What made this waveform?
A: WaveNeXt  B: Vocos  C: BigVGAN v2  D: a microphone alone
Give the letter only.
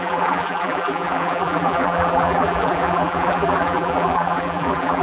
C